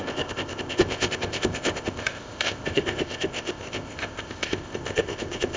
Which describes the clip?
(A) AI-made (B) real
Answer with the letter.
A